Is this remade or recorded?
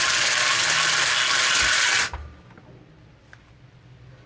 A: recorded